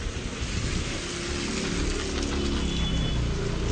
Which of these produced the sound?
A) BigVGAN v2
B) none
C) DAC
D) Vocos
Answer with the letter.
B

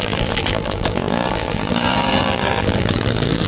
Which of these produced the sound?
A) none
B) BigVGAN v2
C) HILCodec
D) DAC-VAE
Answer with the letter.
B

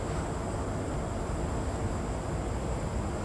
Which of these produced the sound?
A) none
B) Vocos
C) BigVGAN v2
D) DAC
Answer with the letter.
A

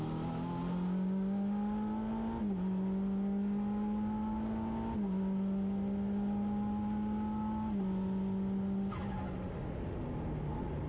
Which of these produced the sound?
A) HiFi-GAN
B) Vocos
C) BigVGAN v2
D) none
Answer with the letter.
D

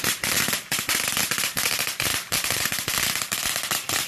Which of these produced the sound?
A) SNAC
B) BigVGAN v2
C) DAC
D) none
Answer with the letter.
B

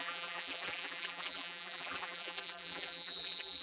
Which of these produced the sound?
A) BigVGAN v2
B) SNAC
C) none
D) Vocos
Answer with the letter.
A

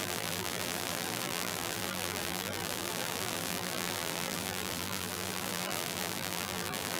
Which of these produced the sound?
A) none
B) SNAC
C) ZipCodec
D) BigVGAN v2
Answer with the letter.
D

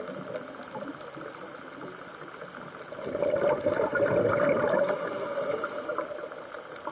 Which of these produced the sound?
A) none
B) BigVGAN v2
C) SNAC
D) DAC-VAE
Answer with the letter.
A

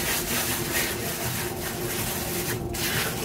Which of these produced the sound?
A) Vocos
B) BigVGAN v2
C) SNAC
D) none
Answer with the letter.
D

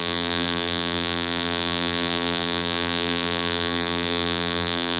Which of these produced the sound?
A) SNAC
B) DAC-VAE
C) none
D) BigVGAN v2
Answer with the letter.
D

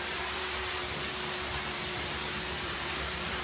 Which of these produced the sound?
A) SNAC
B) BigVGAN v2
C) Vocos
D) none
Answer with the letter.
B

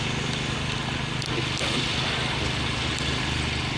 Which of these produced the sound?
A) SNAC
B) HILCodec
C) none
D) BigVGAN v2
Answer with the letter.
C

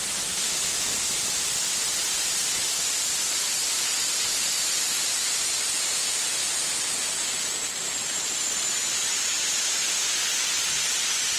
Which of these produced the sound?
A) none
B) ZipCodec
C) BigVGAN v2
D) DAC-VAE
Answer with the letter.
A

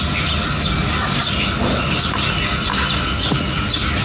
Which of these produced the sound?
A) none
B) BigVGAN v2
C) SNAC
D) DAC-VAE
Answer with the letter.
A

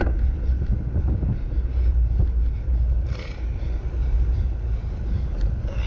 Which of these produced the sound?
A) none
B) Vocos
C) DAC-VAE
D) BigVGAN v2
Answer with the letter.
A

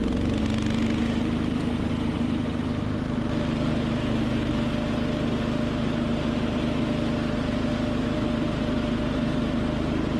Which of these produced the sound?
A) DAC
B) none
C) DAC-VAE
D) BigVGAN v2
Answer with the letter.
B